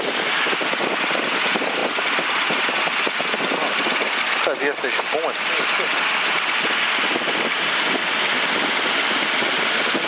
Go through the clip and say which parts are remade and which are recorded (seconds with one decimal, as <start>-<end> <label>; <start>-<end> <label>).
0.0-10.1 recorded